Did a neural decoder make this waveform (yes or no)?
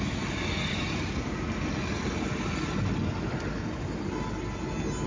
no